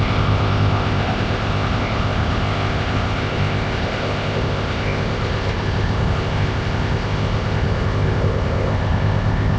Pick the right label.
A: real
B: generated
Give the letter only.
B